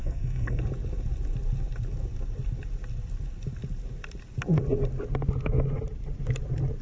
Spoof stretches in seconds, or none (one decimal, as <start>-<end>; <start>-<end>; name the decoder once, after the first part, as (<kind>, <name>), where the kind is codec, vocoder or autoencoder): 0.0-0.6 (codec, SNAC)